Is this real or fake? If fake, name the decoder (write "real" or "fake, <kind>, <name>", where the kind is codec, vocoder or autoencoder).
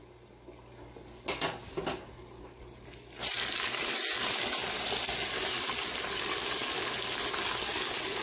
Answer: real